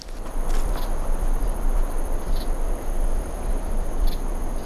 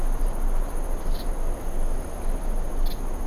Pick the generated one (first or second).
first